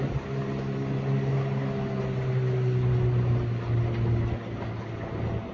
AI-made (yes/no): no